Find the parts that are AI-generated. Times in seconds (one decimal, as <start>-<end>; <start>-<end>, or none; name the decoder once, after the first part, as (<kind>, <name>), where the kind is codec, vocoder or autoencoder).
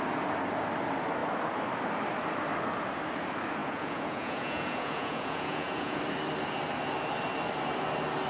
3.6-6.0 (vocoder, Vocos)